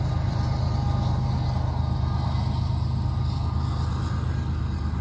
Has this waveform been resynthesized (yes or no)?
no